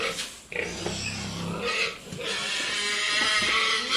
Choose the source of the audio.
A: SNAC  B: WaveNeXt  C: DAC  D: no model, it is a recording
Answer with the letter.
D